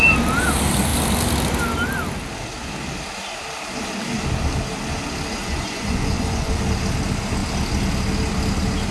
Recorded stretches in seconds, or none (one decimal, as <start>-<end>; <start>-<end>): 0.0-5.4; 6.6-8.9